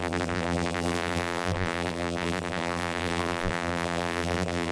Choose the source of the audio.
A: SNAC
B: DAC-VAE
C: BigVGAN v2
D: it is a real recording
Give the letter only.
C